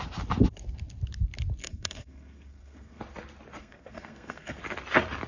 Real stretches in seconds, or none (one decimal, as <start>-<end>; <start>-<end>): 0.0-1.6; 3.0-3.6; 4.6-5.3